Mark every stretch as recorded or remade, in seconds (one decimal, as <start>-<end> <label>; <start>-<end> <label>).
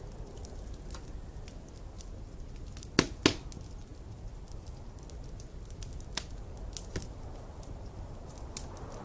0.0-9.0 recorded